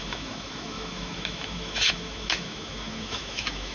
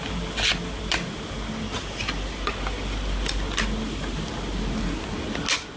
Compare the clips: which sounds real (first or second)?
second